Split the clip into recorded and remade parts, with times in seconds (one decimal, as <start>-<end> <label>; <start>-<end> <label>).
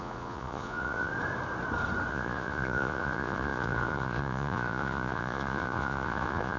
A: 0.0-1.1 remade; 1.1-2.1 recorded; 2.1-6.6 remade